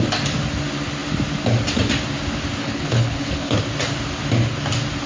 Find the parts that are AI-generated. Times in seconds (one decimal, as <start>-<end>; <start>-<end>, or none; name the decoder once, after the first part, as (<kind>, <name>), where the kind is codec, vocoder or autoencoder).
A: 2.6-3.6 (codec, HILCodec)